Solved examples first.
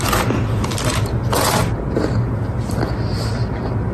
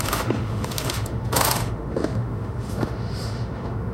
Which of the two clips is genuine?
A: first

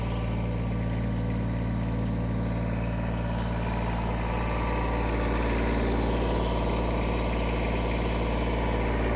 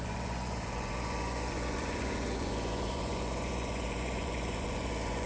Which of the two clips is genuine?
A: first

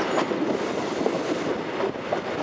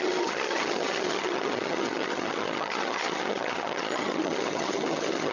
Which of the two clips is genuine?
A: first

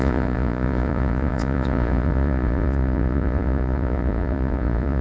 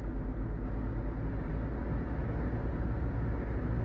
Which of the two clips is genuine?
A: second